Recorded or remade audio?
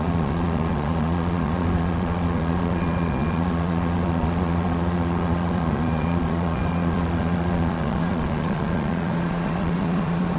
remade